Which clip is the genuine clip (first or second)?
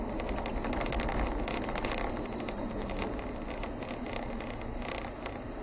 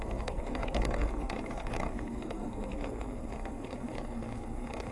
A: first